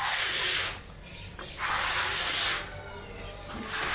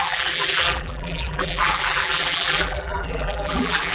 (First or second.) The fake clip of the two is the second